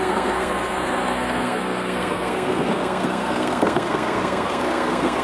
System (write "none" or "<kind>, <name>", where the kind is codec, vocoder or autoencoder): codec, SNAC